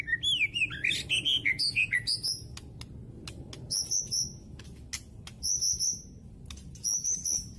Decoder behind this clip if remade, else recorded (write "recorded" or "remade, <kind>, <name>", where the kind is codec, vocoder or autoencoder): recorded